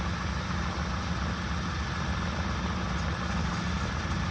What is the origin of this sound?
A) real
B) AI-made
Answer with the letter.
A